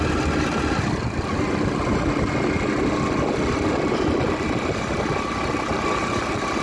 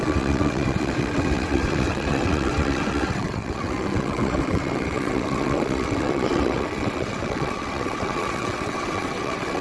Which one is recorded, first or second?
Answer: first